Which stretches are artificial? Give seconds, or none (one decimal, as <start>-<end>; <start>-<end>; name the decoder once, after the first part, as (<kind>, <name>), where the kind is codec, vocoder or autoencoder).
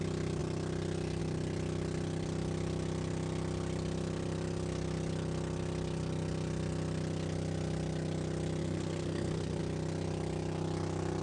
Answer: 8.6-9.6 (codec, SNAC)